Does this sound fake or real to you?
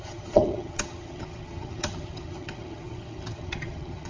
fake